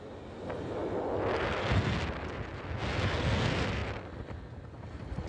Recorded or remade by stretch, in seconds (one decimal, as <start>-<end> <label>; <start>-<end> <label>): 0.0-5.3 recorded